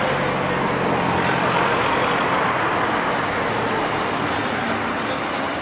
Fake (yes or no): no